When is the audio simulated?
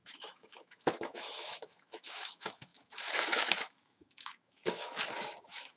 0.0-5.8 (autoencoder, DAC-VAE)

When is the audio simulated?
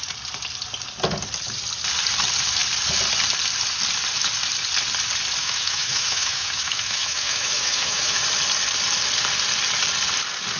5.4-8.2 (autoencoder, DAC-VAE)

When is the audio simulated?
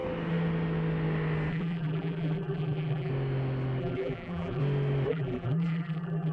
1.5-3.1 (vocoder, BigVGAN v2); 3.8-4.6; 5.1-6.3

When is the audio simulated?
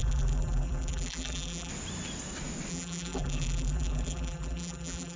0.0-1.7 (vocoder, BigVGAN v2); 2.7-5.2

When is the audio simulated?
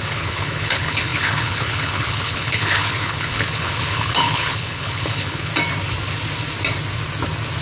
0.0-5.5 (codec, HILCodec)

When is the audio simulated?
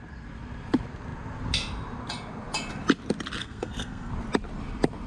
3.4-4.1 (codec, SNAC)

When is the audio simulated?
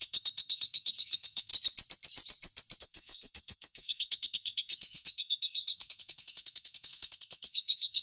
0.0-1.5 (codec, SNAC); 2.8-8.0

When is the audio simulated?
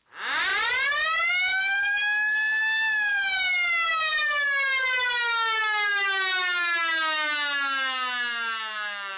0.5-1.3 (vocoder, BigVGAN v2)